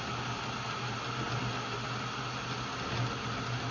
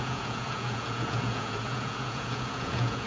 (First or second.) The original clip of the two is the first